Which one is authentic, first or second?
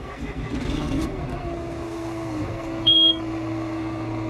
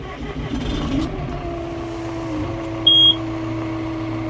second